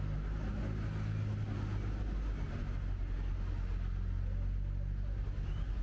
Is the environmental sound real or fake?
real